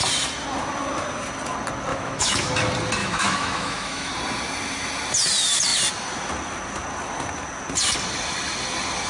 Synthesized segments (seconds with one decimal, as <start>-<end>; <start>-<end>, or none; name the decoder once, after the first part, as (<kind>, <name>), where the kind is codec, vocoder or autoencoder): 1.9-2.5 (autoencoder, DAC-VAE); 3.0-4.1